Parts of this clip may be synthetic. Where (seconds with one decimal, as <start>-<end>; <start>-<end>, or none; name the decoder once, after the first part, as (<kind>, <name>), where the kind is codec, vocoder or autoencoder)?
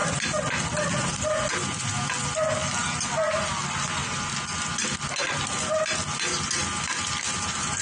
none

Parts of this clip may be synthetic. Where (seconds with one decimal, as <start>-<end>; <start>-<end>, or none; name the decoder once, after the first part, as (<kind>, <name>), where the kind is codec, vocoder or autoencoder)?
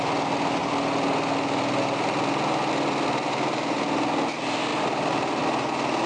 none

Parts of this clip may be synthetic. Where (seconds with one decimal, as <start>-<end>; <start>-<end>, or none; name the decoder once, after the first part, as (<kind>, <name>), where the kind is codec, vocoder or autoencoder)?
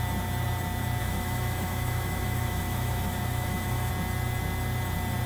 1.0-3.9 (autoencoder, DAC-VAE)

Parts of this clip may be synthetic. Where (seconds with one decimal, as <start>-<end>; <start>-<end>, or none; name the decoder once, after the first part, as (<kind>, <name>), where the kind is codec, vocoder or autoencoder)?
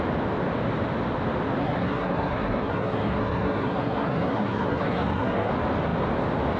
1.6-5.5 (codec, SNAC)